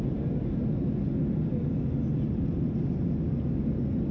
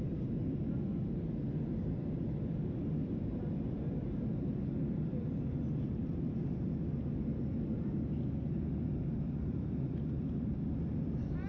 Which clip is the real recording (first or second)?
first